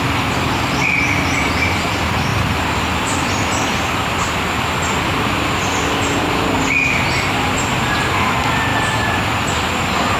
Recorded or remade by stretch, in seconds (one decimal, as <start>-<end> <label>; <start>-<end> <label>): 0.0-10.2 recorded